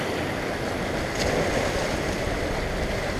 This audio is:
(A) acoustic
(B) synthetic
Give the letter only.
A